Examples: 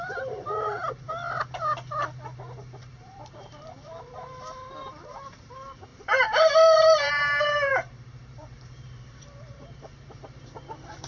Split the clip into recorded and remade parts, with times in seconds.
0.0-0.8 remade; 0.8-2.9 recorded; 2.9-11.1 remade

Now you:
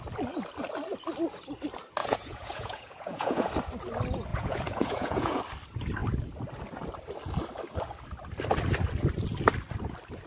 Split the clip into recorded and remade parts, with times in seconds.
0.0-2.0 recorded; 2.0-3.5 remade; 3.5-4.3 recorded; 4.3-5.4 remade; 5.4-10.3 recorded